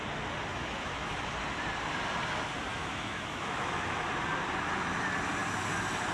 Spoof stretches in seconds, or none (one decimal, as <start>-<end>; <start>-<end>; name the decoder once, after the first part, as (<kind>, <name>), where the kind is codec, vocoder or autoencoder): 0.5-1.3 (autoencoder, DAC-VAE); 2.7-4.1